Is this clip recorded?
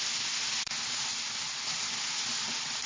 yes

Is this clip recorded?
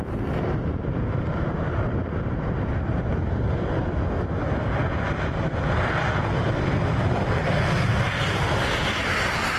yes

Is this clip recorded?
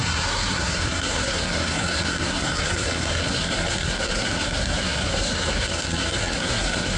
no